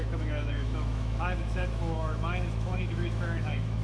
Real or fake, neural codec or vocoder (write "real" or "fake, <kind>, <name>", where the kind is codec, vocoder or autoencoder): fake, autoencoder, DAC-VAE